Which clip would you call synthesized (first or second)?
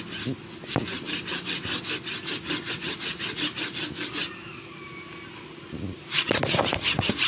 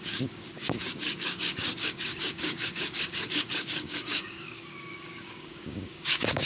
second